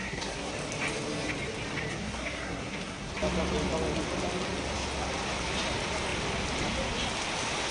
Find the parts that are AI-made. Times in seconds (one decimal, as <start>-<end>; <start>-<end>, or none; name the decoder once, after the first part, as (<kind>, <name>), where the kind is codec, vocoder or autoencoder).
0.0-0.5 (codec, SNAC); 1.9-3.1